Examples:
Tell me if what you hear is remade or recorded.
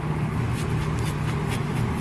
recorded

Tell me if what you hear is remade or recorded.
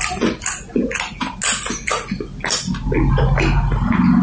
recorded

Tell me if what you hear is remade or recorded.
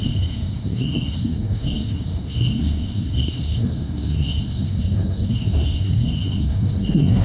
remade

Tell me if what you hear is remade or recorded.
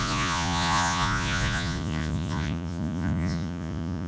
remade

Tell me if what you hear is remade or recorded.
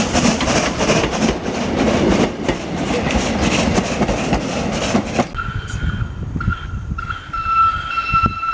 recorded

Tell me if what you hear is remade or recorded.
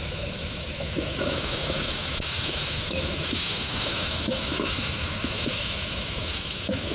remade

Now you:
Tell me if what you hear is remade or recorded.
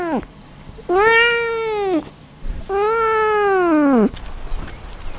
recorded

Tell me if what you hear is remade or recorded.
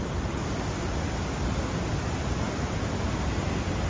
recorded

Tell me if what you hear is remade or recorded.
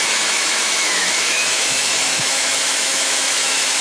remade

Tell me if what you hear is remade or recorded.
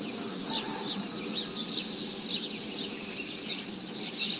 recorded